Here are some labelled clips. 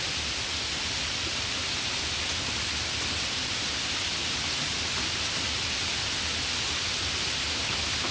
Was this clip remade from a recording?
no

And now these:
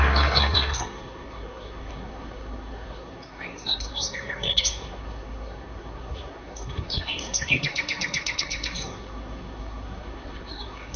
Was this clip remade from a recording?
yes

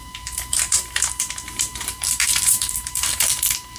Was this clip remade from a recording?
yes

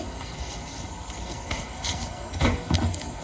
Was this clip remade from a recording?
yes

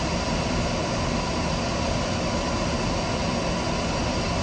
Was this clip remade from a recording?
no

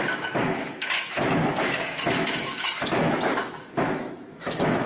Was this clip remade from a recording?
yes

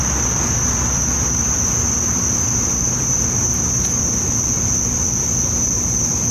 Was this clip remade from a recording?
no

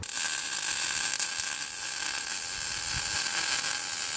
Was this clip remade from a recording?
no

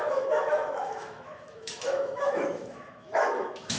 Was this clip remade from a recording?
yes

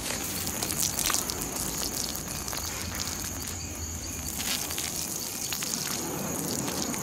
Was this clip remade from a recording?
no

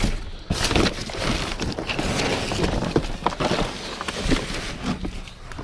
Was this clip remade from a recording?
no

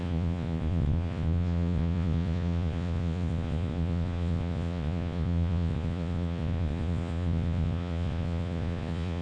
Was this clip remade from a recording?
yes